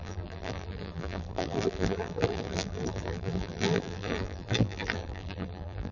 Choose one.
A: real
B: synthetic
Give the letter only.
B